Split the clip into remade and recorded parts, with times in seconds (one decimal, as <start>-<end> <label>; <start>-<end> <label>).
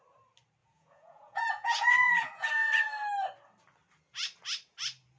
0.0-0.6 recorded; 0.6-2.9 remade; 2.9-5.2 recorded